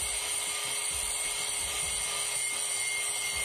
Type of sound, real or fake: real